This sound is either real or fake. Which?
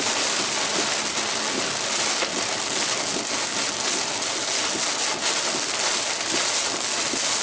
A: real